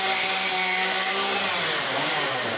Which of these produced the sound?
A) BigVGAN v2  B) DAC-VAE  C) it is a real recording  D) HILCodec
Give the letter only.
A